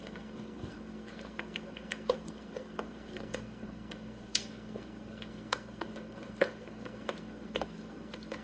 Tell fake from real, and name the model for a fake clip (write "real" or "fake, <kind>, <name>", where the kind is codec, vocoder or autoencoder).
fake, codec, SNAC